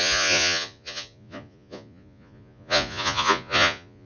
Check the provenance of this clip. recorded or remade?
remade